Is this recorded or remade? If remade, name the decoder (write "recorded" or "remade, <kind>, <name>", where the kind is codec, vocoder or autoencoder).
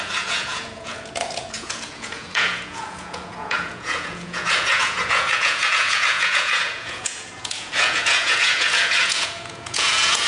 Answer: remade, vocoder, Vocos